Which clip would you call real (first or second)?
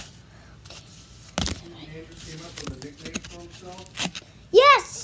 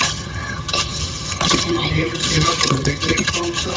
first